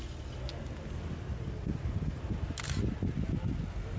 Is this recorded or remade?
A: recorded